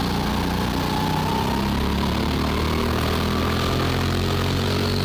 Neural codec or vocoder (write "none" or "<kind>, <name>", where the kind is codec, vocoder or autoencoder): none